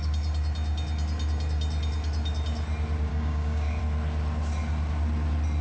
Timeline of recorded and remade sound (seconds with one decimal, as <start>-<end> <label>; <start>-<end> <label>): 0.0-3.1 recorded; 3.1-3.8 remade; 3.8-5.6 recorded

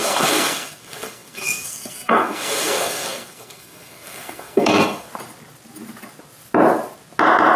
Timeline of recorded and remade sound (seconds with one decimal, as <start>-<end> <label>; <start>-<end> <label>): 0.0-5.1 remade; 5.1-7.6 recorded